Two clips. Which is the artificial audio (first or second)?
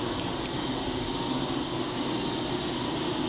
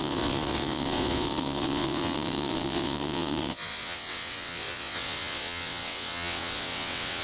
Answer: second